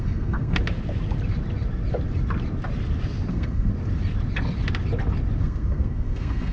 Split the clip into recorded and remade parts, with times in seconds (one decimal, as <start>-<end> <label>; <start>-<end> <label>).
0.0-0.6 remade; 0.6-3.3 recorded; 3.3-3.7 remade; 3.7-5.4 recorded; 5.4-6.5 remade